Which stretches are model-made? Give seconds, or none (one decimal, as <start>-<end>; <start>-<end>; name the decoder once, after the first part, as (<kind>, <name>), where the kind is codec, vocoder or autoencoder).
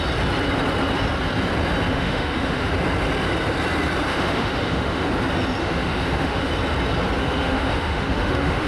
1.9-2.7 (autoencoder, DAC-VAE); 4.1-5.1; 5.6-6.5; 7.2-8.7